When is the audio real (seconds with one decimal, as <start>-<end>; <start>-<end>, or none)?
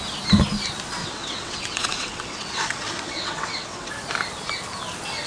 0.0-1.0; 3.9-5.3